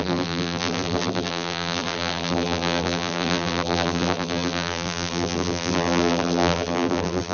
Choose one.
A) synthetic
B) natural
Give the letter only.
A